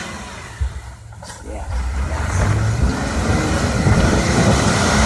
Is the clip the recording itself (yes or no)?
no